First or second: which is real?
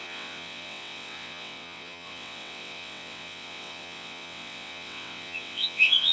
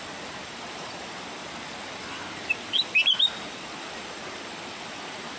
second